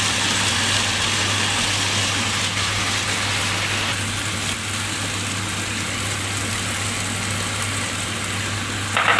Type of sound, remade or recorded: recorded